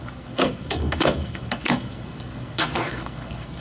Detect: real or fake fake